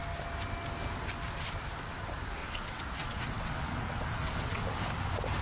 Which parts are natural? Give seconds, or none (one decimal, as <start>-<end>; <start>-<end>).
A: 0.0-2.4; 4.6-5.4